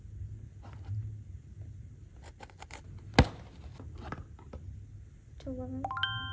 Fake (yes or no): no